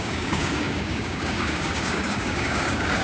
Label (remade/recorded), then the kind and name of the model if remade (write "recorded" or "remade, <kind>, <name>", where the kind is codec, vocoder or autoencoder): remade, codec, DAC